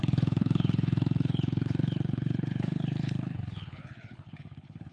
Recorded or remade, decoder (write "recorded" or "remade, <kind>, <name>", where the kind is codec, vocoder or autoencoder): remade, codec, HILCodec